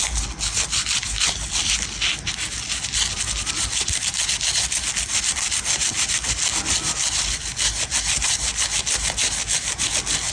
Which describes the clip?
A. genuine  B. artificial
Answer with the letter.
A